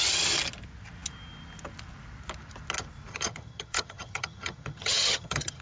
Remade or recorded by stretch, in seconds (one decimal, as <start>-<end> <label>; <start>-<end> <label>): 0.0-3.1 recorded; 3.1-5.6 remade